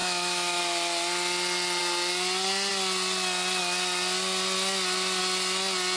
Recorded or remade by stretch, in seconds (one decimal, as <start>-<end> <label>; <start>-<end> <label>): 0.0-0.6 remade; 0.6-6.0 recorded